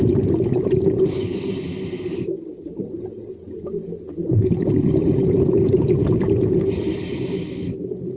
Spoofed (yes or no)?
no